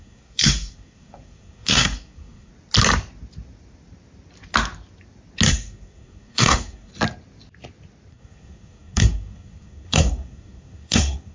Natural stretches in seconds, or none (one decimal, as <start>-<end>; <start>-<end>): 2.5-5.5; 6.9-8.1